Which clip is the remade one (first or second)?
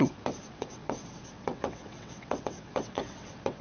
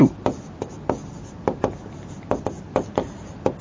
first